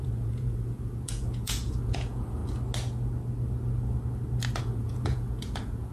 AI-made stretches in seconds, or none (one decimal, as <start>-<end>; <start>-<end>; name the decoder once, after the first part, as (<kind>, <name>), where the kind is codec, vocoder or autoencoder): 0.0-2.4 (vocoder, Vocos); 4.6-5.9